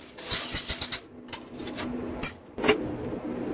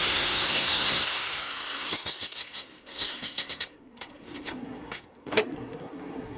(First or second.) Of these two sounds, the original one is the first